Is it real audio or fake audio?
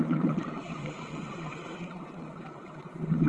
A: fake